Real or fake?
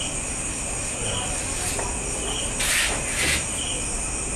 real